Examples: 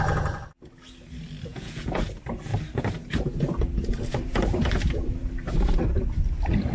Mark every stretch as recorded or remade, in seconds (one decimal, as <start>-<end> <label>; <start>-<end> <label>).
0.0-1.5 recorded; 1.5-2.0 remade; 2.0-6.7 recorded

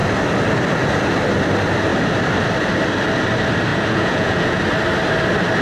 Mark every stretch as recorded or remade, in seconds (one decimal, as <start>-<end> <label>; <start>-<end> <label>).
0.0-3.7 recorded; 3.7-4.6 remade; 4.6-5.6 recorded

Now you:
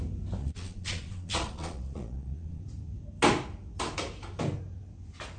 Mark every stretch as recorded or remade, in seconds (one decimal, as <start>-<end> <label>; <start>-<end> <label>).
0.0-0.4 recorded; 0.4-2.6 remade; 2.6-5.4 recorded

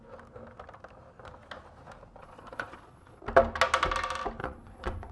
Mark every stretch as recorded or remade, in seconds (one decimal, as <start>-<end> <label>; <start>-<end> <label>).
0.0-2.2 recorded; 2.2-3.2 remade; 3.2-4.4 recorded; 4.4-5.1 remade

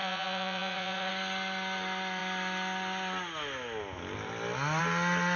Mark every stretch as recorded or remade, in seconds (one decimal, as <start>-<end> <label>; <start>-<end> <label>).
0.0-1.1 remade; 1.1-5.4 recorded